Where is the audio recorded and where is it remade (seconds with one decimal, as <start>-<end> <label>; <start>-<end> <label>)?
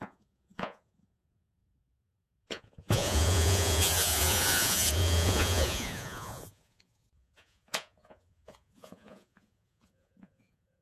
0.0-10.8 remade